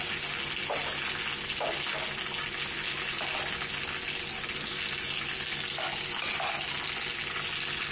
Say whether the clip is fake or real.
real